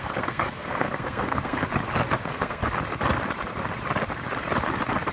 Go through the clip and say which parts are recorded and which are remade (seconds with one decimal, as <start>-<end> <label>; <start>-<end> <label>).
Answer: 0.0-1.6 remade; 1.6-2.2 recorded; 2.2-2.6 remade; 2.6-5.1 recorded

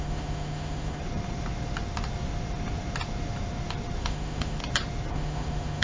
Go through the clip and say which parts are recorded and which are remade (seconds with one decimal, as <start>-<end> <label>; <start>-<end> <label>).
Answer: 0.0-1.0 remade; 1.0-4.0 recorded; 4.0-4.6 remade; 4.6-5.1 recorded; 5.1-5.8 remade

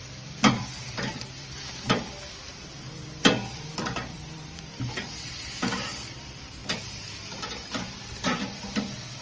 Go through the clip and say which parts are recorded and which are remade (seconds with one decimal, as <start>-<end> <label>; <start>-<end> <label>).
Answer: 0.0-6.6 remade; 6.6-8.2 recorded; 8.2-9.2 remade

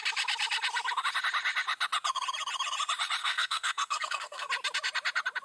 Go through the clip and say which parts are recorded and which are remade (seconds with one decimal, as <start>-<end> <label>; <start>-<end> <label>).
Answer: 0.0-3.2 recorded; 3.2-4.5 remade; 4.5-5.4 recorded

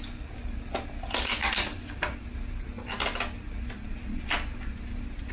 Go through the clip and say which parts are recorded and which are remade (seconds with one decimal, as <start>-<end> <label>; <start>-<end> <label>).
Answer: 0.0-5.3 recorded

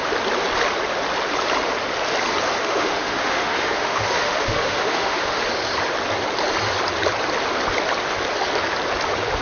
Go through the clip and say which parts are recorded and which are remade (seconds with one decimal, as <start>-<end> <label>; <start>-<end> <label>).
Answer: 0.0-2.6 recorded; 2.6-5.4 remade; 5.4-9.4 recorded

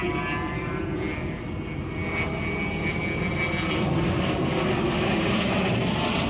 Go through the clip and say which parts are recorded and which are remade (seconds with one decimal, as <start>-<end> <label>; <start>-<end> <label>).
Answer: 0.0-6.3 recorded